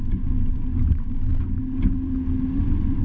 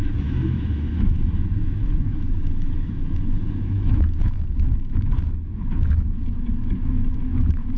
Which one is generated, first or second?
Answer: second